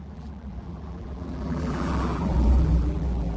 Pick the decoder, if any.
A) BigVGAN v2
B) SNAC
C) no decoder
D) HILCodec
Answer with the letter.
A